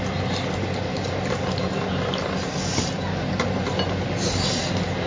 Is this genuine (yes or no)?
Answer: yes